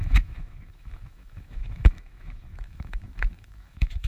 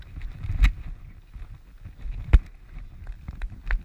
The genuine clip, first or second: second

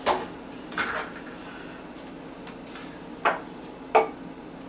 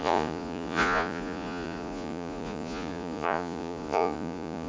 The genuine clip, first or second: first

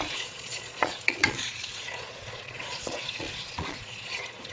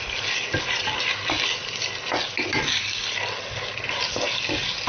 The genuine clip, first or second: second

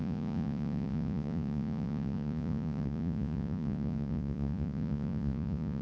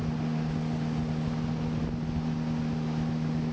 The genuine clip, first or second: second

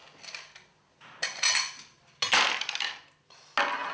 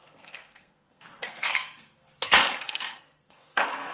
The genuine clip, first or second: first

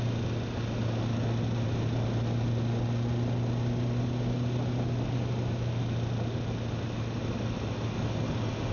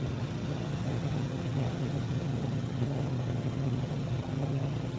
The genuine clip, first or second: first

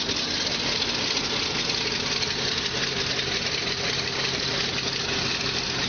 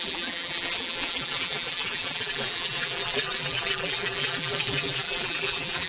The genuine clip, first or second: first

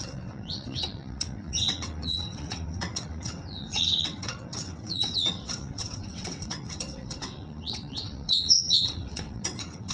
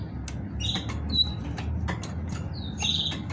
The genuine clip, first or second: second